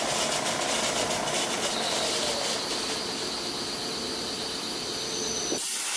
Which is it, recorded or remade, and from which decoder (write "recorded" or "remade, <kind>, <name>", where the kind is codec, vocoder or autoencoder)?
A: recorded